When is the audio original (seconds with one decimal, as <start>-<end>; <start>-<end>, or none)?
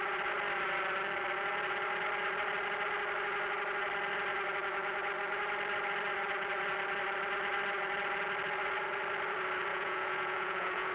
0.0-9.7